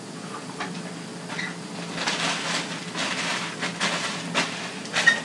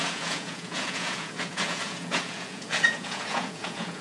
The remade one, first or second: second